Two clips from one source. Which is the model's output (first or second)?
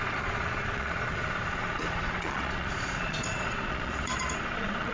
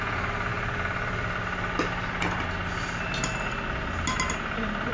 first